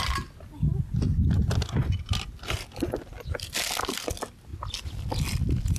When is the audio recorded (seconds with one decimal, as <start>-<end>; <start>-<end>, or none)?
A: 0.0-5.8